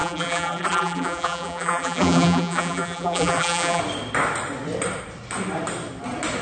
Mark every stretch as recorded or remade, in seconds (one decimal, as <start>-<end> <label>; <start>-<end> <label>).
0.0-3.8 remade; 3.8-6.4 recorded